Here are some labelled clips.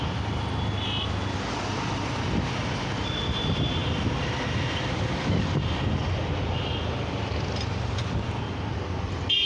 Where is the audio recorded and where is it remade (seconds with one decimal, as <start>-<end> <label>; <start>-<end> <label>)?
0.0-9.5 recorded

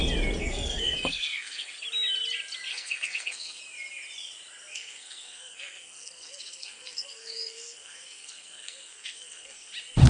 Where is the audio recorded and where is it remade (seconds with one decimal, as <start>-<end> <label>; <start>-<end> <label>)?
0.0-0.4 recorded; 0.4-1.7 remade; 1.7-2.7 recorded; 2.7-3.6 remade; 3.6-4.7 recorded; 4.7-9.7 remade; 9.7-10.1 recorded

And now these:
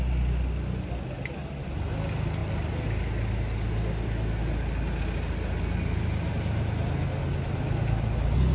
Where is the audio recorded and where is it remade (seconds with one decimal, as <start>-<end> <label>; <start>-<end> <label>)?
0.0-8.5 recorded

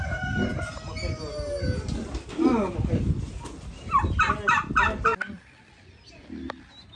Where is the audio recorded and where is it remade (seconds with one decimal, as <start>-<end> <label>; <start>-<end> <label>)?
0.0-7.0 recorded

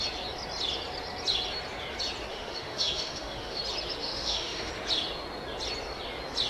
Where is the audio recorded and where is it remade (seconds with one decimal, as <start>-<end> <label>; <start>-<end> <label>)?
0.0-2.3 recorded; 2.3-3.6 remade; 3.6-4.0 recorded; 4.0-4.7 remade; 4.7-6.5 recorded